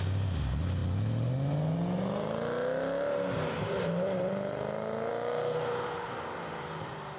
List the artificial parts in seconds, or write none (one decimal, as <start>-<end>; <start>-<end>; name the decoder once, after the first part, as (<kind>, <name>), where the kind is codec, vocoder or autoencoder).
none